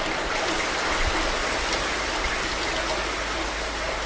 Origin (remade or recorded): recorded